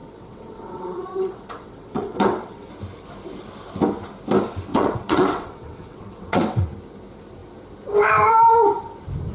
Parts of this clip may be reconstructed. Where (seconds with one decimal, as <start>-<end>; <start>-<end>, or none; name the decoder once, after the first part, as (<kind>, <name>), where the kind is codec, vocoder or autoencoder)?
0.0-2.7 (vocoder, WaveNeXt); 4.7-6.7